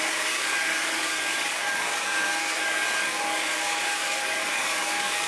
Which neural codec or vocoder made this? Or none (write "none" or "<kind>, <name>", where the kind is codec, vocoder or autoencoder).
codec, DAC